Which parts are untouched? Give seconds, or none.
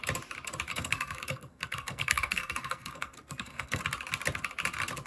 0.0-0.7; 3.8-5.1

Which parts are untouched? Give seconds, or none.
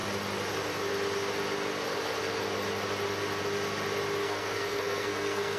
0.0-4.2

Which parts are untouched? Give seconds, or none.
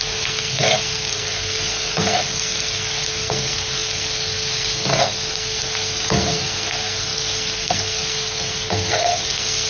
none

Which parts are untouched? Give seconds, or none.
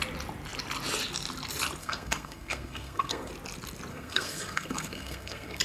0.0-1.8; 3.3-3.9